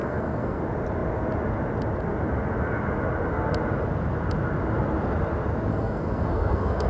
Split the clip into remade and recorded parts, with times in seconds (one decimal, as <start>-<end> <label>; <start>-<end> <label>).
0.0-0.6 remade; 0.6-5.7 recorded; 5.7-6.9 remade